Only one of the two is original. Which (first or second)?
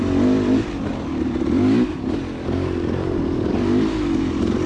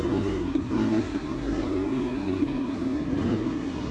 first